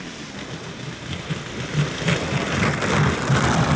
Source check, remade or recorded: recorded